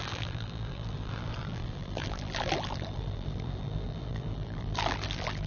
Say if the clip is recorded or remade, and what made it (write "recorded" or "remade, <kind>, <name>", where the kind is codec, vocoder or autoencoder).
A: remade, vocoder, BigVGAN v2